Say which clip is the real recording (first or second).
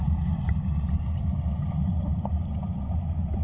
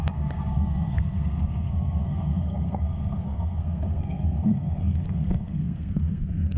first